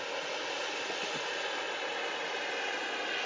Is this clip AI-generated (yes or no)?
no